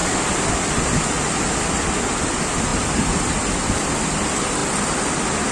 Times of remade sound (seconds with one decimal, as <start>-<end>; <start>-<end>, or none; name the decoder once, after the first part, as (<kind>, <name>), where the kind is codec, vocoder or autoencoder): 2.7-3.5 (vocoder, BigVGAN v2)

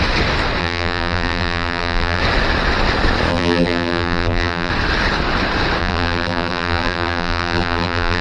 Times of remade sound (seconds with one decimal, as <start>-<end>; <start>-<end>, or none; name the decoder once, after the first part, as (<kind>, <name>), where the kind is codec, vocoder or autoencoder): 0.6-2.2 (vocoder, BigVGAN v2); 3.3-4.7; 5.8-8.2

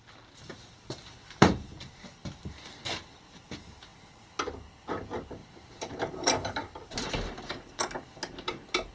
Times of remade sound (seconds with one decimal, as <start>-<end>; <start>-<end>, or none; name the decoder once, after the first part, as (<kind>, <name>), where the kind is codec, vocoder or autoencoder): 0.5-1.7 (vocoder, BigVGAN v2); 5.4-7.1

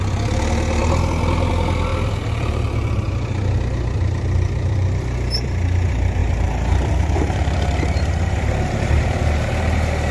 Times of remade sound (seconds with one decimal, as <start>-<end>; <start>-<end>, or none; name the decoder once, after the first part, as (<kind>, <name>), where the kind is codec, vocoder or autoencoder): 0.0-0.8 (vocoder, BigVGAN v2); 1.5-10.1

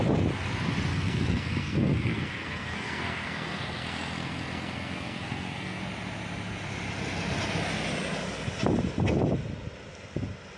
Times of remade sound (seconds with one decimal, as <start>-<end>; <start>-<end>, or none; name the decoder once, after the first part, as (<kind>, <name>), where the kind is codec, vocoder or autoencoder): 0.9-5.8 (codec, SNAC)

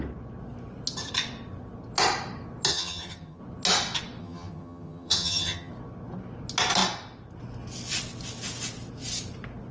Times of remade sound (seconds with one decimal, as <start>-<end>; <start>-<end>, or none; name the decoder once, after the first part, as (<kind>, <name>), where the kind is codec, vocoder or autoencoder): 2.7-3.4 (vocoder, HiFi-GAN); 4.2-5.7